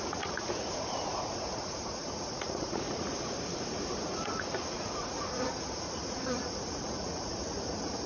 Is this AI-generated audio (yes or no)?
yes